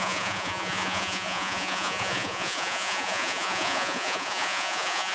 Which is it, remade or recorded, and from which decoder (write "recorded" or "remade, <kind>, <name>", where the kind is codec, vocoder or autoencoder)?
remade, vocoder, Vocos